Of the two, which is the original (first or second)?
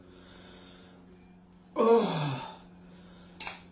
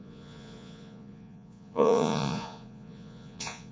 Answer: first